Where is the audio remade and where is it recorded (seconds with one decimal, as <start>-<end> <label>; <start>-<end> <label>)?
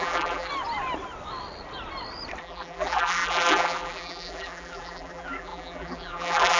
0.0-0.5 remade; 0.5-2.4 recorded; 2.4-6.6 remade